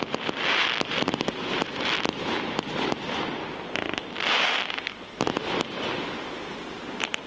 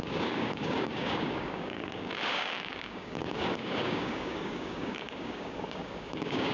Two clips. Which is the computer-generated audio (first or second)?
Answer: second